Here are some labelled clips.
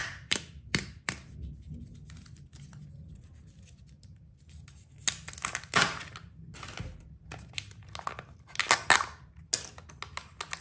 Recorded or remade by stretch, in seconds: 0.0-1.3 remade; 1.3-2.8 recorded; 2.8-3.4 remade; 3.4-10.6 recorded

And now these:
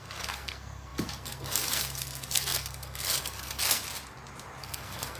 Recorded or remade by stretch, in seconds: 0.0-3.8 remade; 3.8-4.6 recorded; 4.6-5.2 remade